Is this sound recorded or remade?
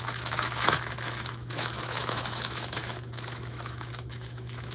remade